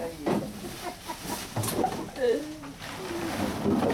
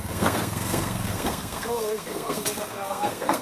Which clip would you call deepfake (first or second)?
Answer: second